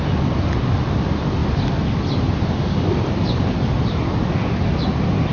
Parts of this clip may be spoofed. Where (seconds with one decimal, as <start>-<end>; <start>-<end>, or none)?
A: none